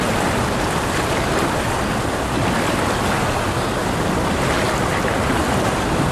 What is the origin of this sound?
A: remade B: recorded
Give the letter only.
B